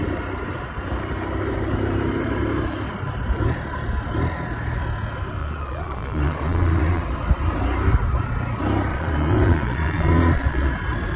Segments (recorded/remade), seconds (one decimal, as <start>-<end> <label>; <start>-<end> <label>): 0.0-5.4 recorded; 5.4-7.0 remade; 7.0-8.9 recorded; 8.9-10.7 remade; 10.7-11.2 recorded